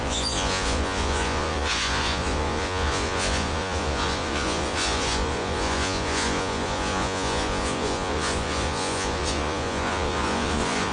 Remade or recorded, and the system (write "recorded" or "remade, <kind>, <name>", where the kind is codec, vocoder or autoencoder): remade, vocoder, Vocos